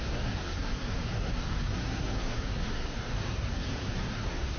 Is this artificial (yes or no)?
yes